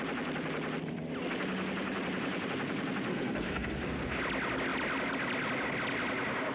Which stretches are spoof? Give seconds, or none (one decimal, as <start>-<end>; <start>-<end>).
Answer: 3.1-4.2

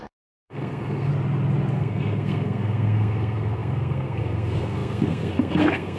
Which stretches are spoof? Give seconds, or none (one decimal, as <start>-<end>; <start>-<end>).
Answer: 0.0-1.1; 1.7-6.0

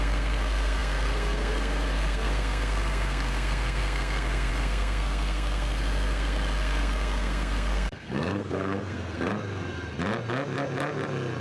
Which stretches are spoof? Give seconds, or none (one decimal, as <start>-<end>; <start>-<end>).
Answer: 0.0-9.3

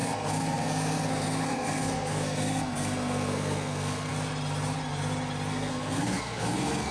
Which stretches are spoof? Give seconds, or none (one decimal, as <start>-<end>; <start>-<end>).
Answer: 0.0-4.1; 5.5-6.9

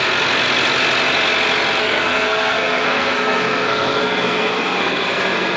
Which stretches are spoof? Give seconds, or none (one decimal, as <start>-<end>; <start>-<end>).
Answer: 1.8-5.6

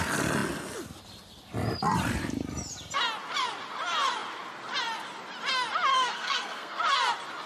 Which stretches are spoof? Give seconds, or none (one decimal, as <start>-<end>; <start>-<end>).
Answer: 5.9-6.8

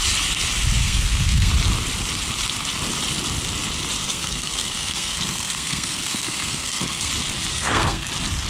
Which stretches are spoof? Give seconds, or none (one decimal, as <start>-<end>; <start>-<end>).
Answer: 0.8-1.5; 4.0-7.1; 7.5-8.1